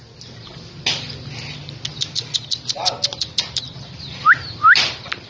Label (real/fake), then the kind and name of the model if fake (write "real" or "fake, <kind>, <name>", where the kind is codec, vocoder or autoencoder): real